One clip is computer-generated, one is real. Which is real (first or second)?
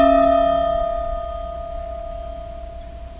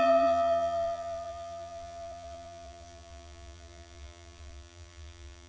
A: first